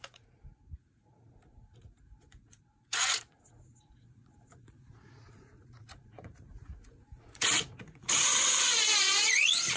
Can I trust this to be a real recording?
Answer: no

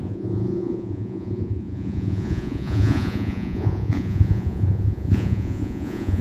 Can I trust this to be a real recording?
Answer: no